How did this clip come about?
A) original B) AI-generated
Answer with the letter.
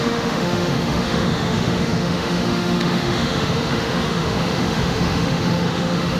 B